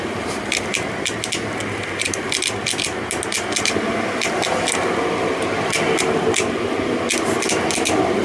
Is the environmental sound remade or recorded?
recorded